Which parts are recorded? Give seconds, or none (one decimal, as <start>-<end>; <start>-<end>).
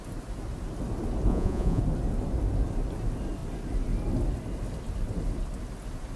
0.0-1.3; 1.8-6.2